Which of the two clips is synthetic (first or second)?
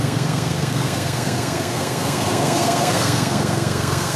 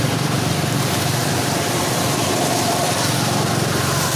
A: first